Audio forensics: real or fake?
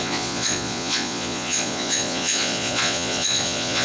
fake